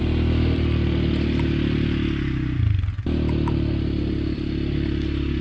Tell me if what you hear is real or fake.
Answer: real